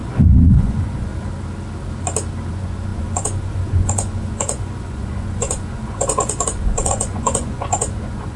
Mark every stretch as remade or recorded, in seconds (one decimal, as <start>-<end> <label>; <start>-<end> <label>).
0.0-1.1 remade; 1.1-2.5 recorded; 2.5-8.4 remade